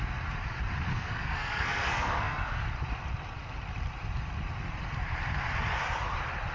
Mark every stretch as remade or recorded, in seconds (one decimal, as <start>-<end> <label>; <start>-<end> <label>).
0.0-0.9 recorded; 0.9-2.6 remade; 2.6-6.5 recorded